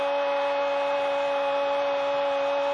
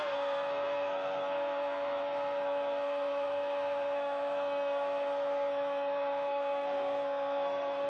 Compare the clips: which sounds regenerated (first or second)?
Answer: second